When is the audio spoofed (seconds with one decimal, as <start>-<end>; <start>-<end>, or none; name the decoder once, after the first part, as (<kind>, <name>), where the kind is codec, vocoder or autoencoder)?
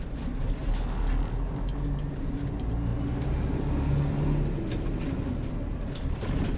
none